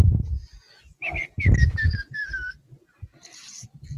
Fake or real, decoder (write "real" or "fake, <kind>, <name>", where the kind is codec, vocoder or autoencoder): real